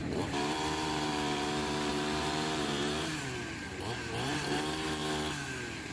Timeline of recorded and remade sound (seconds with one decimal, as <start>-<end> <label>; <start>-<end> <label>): 0.0-5.0 remade; 5.0-5.9 recorded